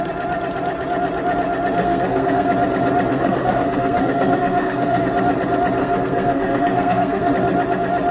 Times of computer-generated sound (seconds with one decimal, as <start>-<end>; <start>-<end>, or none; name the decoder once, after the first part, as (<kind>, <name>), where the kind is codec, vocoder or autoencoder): 1.8-2.5 (codec, SNAC); 3.1-5.1; 5.8-7.3